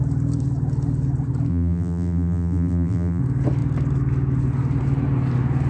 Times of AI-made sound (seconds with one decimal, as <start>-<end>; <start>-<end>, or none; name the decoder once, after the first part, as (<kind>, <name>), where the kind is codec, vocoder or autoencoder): 1.5-3.2 (vocoder, BigVGAN v2)